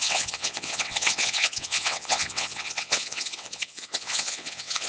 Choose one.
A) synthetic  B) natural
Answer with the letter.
A